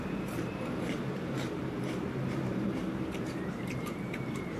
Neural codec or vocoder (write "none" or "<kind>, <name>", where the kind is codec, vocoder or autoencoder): vocoder, BigVGAN v2